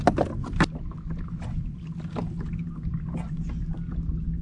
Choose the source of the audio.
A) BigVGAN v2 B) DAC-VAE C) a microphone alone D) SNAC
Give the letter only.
C